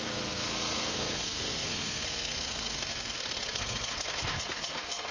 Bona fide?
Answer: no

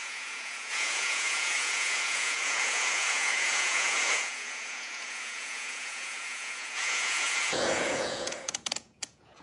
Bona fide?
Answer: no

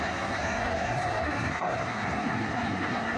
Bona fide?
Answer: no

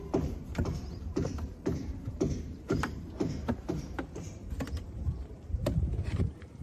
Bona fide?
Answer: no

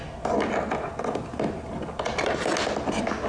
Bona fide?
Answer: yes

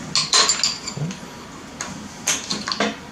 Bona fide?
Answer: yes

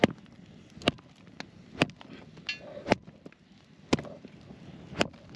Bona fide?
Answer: yes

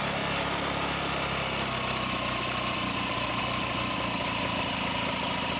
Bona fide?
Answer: yes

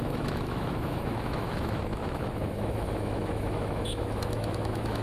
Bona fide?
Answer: no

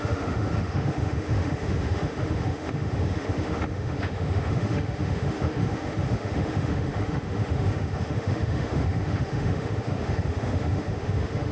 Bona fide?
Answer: no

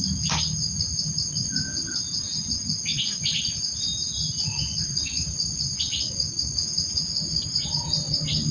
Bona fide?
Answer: yes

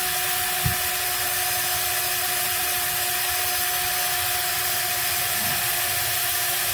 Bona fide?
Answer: yes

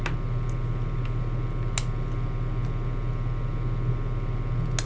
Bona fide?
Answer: yes